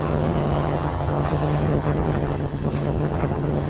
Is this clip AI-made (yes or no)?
yes